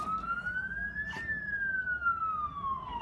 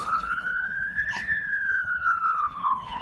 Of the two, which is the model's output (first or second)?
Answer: second